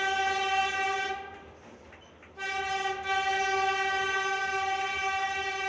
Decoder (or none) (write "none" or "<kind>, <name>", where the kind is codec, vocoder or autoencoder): none